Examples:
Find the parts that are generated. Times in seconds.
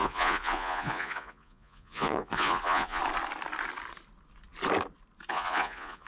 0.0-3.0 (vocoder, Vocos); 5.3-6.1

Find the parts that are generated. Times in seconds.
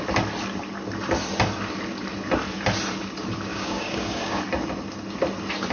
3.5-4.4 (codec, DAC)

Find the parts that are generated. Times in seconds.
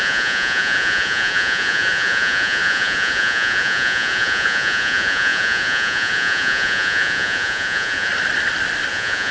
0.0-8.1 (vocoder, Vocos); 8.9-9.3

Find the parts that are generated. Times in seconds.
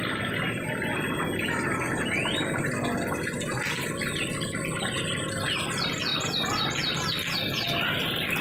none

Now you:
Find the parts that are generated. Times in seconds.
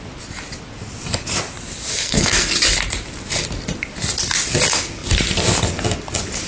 1.9-2.5 (codec, SNAC)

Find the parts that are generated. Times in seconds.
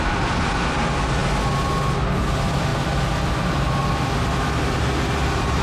none